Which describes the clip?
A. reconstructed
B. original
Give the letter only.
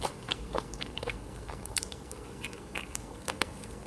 A